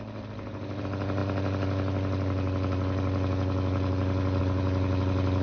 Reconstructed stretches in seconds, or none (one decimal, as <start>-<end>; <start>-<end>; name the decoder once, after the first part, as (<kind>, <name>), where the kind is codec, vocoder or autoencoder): none